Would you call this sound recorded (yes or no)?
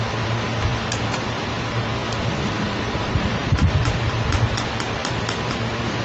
yes